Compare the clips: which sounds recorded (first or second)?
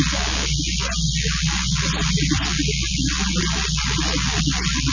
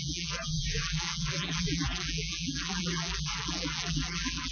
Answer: first